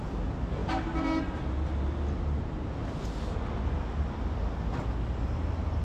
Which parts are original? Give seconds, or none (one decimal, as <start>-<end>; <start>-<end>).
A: 0.0-5.8